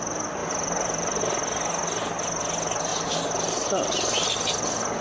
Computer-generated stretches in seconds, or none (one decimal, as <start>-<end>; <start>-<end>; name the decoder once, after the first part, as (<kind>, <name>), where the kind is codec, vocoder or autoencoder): 0.4-1.2 (vocoder, BigVGAN v2); 2.9-5.0